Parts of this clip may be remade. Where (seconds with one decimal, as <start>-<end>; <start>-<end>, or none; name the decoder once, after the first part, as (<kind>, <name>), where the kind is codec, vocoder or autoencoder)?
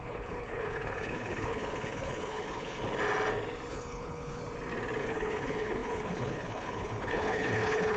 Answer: 0.0-2.8 (codec, HILCodec); 3.7-4.4; 5.0-8.0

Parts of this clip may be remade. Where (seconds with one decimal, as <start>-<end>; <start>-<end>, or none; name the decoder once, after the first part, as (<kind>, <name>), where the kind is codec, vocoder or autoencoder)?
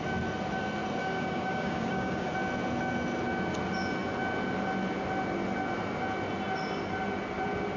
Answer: 1.0-2.3 (codec, DAC)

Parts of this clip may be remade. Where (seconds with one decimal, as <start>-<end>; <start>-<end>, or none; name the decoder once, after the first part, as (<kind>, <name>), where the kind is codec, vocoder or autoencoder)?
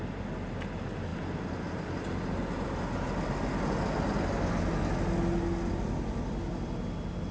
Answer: none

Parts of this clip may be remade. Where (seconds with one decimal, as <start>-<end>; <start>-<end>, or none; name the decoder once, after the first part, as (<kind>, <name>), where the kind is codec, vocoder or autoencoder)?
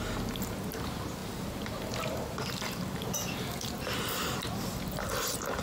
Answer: none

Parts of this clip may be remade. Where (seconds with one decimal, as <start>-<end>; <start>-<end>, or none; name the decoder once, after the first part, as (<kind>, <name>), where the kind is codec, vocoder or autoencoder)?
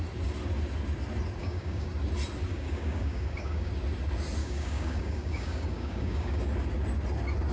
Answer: 1.4-1.9 (codec, DAC); 2.5-3.7; 4.4-6.4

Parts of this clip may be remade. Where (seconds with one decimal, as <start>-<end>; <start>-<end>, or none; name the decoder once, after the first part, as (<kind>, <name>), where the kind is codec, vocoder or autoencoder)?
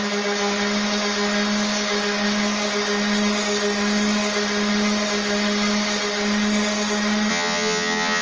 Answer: 7.3-8.2 (vocoder, HiFi-GAN)